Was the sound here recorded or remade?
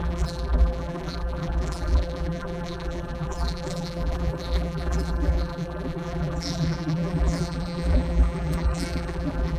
remade